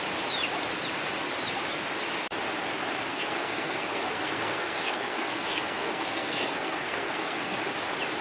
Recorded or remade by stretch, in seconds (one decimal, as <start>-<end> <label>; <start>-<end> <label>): 0.0-3.1 recorded; 3.1-7.6 remade; 7.6-8.2 recorded